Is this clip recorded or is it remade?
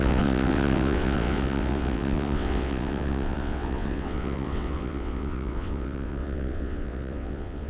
remade